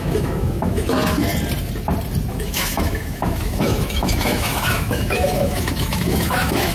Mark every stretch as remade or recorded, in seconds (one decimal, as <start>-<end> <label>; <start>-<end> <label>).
0.0-1.3 remade; 1.3-2.3 recorded; 2.3-6.7 remade